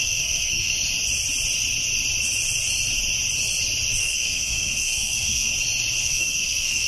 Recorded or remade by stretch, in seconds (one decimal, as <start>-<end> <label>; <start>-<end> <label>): 0.0-0.7 remade; 0.7-4.0 recorded; 4.0-5.5 remade; 5.5-6.0 recorded; 6.0-6.9 remade

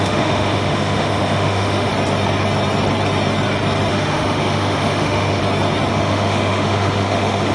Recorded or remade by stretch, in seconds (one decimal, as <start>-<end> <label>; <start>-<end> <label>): 0.0-1.9 remade; 1.9-3.9 recorded; 3.9-5.4 remade; 5.4-5.9 recorded; 5.9-7.5 remade

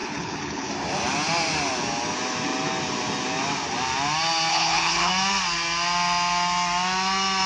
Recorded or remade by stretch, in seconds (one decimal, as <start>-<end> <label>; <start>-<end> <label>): 0.0-0.7 remade; 0.7-4.5 recorded; 4.5-5.1 remade; 5.1-7.5 recorded

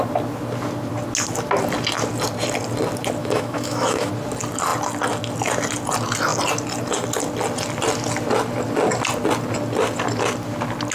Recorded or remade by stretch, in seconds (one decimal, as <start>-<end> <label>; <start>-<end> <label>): 0.0-3.2 recorded; 3.2-4.1 remade; 4.1-10.9 recorded